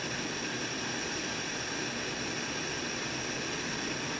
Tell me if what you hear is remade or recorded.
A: recorded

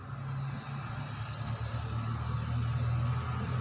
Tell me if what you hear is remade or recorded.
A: recorded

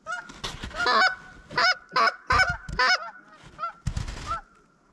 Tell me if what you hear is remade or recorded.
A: recorded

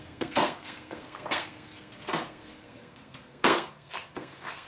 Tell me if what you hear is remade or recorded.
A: remade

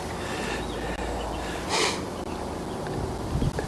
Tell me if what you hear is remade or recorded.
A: recorded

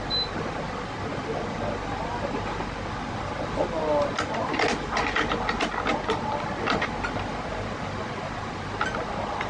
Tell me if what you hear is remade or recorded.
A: recorded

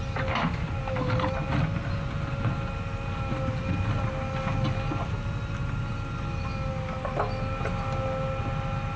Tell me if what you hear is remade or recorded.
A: recorded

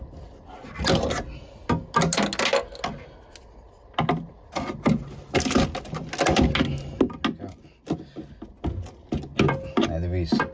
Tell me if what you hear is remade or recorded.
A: recorded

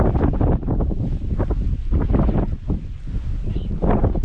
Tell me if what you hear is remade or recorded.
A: recorded